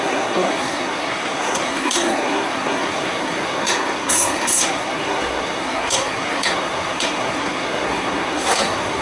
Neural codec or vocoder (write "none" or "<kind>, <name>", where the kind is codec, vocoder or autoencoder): codec, SNAC